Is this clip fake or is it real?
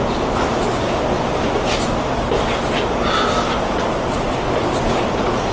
real